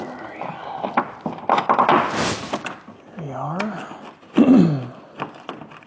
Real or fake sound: real